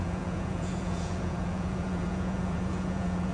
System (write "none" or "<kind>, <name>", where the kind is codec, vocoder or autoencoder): vocoder, Vocos